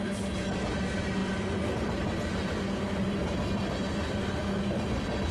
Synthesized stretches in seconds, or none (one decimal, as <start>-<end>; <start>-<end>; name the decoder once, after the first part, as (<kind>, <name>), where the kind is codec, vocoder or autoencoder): none